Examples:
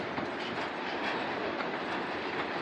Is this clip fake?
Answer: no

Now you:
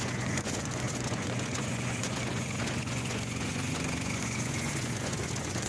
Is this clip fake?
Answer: yes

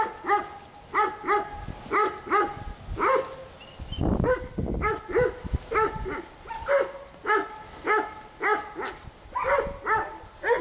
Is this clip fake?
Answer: no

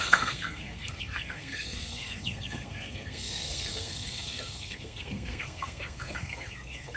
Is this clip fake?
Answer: yes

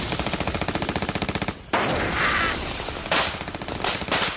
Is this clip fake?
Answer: no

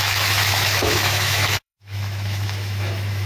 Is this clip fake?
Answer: yes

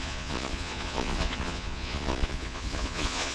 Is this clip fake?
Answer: yes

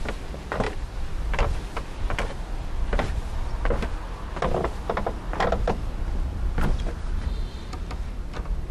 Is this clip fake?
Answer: no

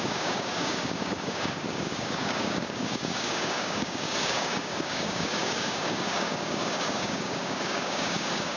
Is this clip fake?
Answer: yes